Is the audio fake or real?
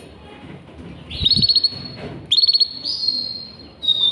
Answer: real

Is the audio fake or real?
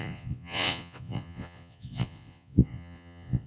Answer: fake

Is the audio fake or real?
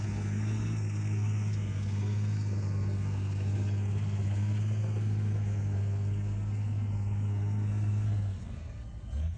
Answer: fake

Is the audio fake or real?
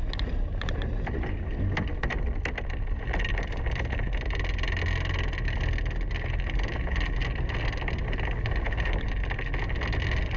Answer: real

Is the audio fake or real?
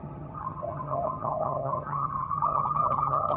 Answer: fake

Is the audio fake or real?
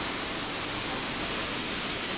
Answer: real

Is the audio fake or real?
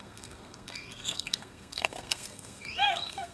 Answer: fake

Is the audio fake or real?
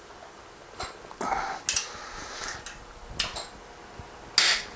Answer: real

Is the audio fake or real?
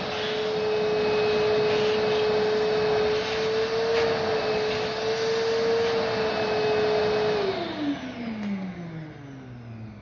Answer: real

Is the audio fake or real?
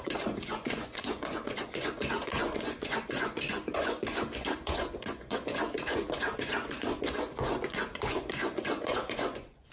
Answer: fake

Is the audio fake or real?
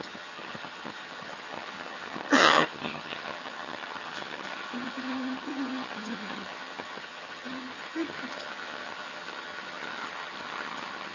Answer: fake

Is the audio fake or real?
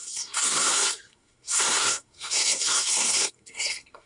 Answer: fake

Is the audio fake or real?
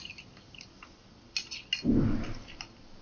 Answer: real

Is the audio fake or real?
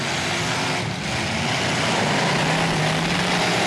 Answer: real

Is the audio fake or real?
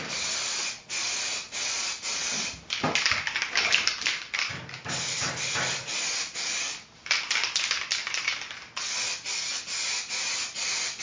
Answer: real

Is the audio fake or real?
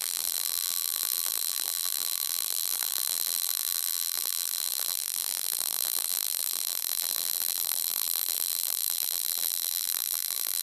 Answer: fake